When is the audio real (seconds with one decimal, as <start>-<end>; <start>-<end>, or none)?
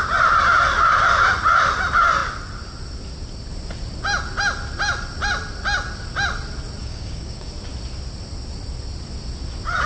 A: 0.0-6.8; 7.5-9.9